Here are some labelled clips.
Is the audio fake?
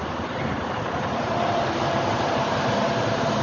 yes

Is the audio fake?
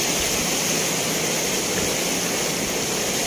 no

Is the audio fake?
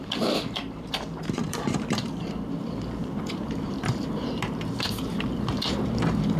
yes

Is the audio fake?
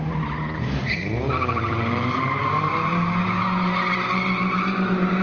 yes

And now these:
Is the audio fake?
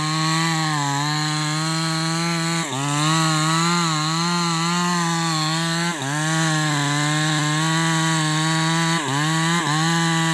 no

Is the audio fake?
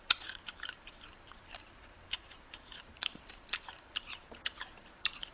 yes